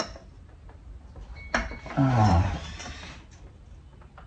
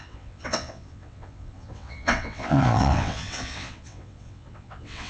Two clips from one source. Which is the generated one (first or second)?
second